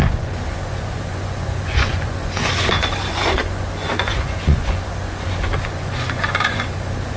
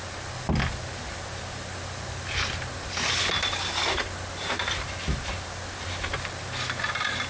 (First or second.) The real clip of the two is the second